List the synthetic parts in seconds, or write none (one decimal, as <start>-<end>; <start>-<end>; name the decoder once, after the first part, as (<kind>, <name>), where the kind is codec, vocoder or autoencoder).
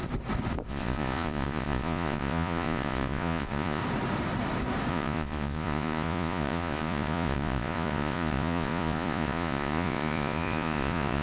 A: 0.7-3.8 (vocoder, Vocos); 4.9-11.2